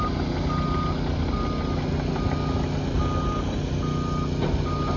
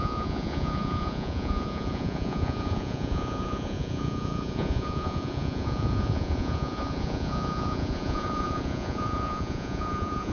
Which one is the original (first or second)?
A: first